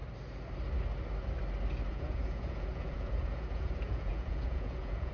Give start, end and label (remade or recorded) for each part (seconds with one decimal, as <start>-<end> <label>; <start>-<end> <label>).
0.0-1.9 recorded; 1.9-5.1 remade